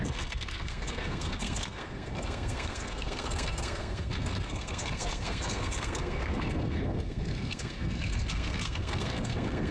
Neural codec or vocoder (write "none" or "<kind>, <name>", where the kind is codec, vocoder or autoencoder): codec, SNAC